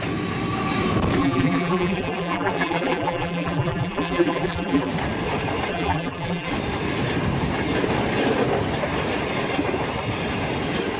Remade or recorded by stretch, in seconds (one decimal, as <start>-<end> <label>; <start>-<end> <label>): 0.0-1.2 recorded; 1.2-4.9 remade; 4.9-5.7 recorded; 5.7-6.5 remade; 6.5-11.0 recorded